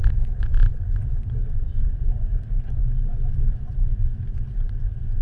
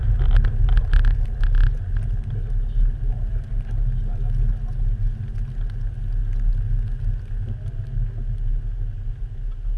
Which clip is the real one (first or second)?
second